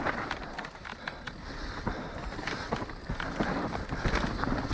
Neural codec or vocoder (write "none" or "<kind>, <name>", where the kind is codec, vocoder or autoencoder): none